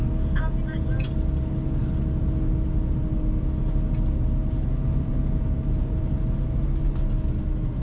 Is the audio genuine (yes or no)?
yes